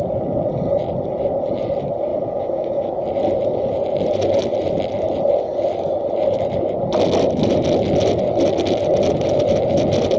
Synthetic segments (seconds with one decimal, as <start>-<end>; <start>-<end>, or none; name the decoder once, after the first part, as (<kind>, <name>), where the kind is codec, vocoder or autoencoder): 2.1-3.0 (autoencoder, DAC-VAE)